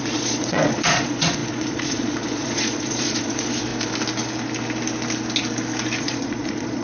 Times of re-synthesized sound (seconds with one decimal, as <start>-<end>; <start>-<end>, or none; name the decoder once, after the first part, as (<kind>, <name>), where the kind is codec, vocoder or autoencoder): 0.0-3.7 (vocoder, Vocos); 6.0-6.8